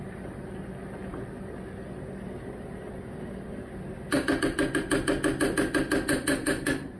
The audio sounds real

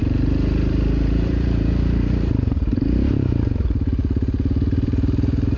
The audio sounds fake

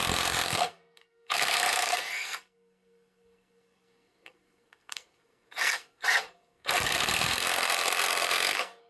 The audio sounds fake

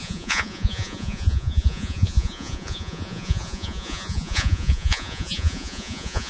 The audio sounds fake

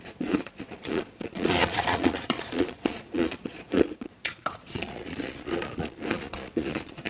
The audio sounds fake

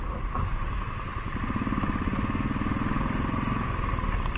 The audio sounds real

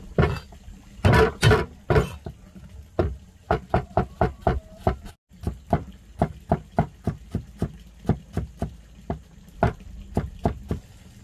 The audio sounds real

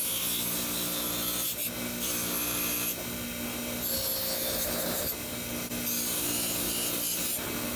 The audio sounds real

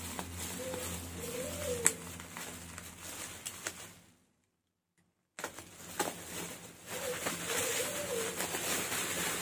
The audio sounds real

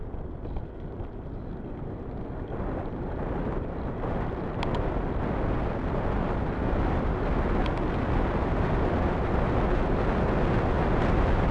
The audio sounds real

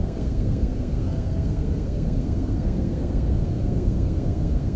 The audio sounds fake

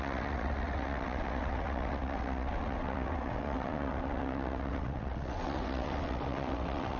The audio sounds fake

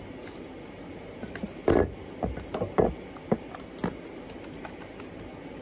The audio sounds real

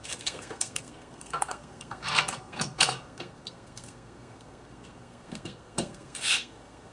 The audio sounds fake